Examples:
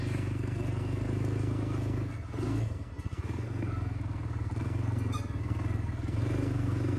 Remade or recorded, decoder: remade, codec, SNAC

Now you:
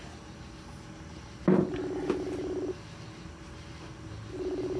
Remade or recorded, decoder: recorded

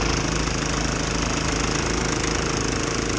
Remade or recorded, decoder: recorded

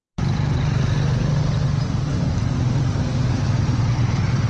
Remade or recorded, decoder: recorded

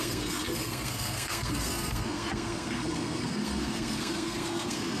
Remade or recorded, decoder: remade, codec, SNAC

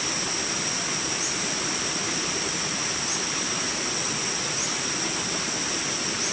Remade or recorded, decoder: recorded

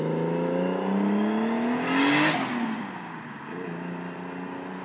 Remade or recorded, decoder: recorded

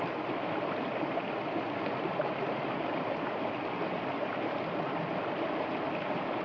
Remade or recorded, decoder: recorded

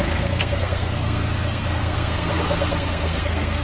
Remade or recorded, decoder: remade, codec, SNAC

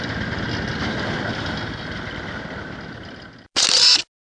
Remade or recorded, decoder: recorded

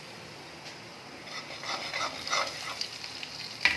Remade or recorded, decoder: recorded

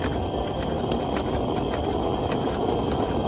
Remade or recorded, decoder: recorded